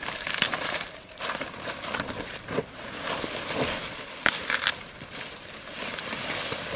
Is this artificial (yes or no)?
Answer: no